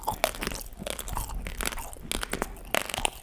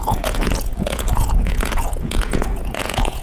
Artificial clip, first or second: second